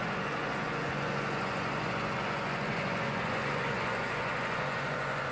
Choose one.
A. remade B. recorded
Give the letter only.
A